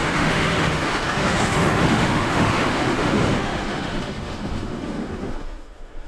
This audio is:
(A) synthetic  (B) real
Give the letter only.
A